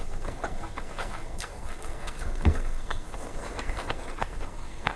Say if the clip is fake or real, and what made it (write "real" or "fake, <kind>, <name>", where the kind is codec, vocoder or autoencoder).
fake, codec, SNAC